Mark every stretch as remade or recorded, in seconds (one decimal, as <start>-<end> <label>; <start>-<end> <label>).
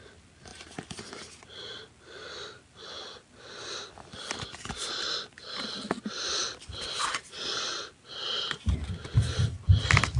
0.0-10.2 recorded